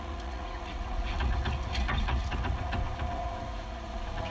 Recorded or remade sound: remade